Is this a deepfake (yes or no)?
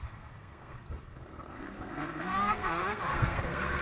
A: yes